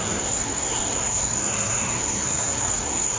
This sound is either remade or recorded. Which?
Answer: remade